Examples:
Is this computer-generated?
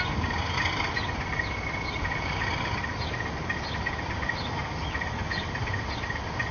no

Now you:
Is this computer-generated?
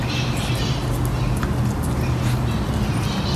no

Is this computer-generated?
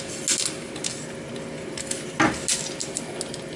no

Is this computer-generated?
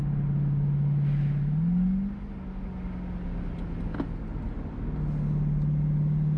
no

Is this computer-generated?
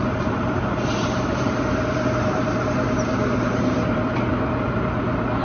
yes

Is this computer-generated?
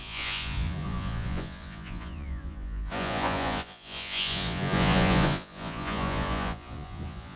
yes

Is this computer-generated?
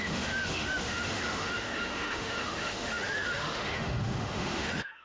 yes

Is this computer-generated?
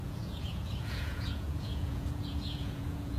yes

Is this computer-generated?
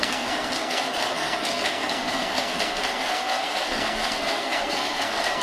yes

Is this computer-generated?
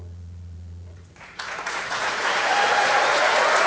yes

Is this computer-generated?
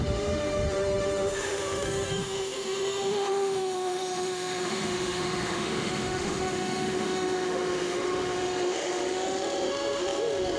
yes